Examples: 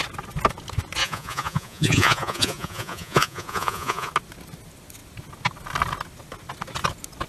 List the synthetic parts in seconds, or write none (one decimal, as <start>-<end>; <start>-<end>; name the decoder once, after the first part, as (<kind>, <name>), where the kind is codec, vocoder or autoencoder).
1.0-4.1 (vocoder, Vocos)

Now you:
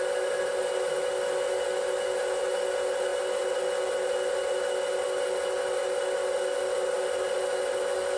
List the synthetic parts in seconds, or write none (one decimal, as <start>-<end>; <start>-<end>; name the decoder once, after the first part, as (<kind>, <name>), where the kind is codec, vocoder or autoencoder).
none

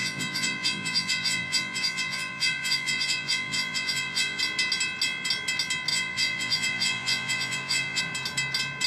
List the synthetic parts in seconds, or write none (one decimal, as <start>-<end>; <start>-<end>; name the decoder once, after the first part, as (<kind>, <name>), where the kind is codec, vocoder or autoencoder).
0.0-4.4 (vocoder, Vocos); 5.9-8.0